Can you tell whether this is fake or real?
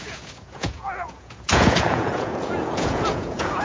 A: fake